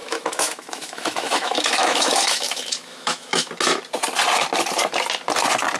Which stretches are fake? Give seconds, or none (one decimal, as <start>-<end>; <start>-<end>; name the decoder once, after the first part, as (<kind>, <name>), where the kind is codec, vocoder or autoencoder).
0.0-3.5 (autoencoder, DAC-VAE)